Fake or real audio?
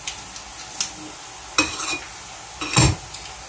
real